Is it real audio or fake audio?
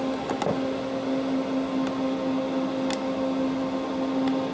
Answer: real